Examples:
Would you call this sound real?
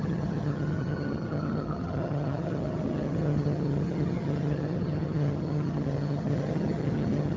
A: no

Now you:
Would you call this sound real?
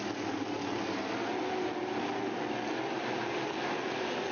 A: yes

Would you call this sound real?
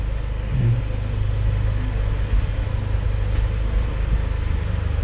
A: yes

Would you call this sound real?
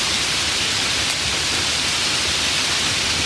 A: yes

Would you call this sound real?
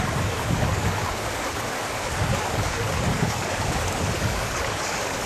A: no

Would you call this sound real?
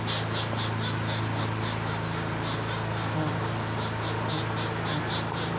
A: yes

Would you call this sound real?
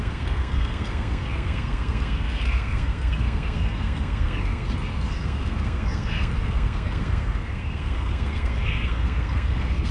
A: no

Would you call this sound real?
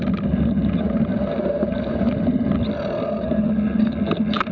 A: yes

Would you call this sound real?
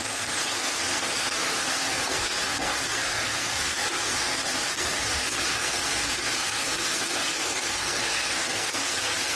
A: no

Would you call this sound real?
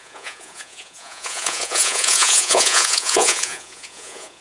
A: no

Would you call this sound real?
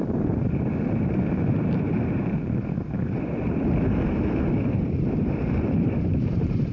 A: no